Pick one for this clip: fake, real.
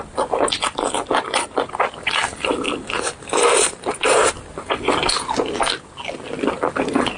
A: real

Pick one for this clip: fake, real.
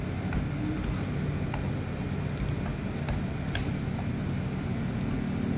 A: real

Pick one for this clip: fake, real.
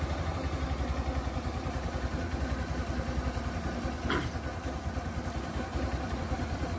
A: real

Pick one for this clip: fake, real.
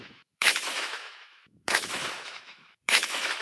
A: fake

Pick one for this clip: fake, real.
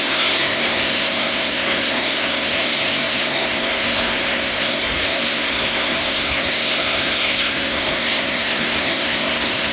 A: fake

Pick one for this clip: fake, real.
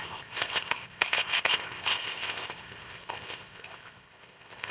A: fake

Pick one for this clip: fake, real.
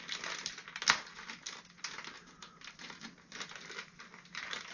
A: real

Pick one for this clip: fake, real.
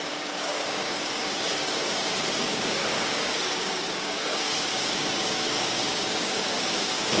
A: fake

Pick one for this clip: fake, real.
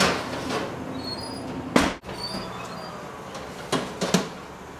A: real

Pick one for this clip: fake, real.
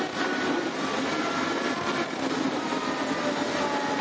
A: real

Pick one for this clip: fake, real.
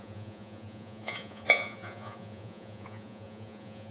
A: fake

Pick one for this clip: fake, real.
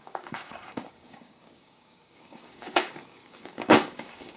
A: fake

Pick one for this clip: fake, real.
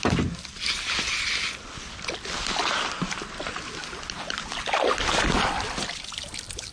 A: real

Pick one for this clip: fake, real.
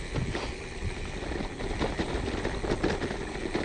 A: real